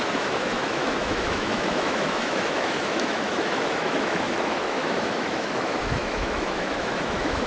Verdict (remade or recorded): remade